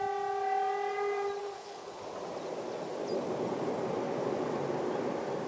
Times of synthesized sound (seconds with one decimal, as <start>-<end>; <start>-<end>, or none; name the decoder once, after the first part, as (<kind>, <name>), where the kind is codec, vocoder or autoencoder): 1.4-2.0 (codec, HILCodec)